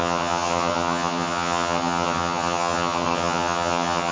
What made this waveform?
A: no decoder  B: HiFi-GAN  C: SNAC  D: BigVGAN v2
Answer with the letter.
B